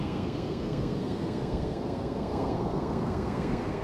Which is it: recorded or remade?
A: remade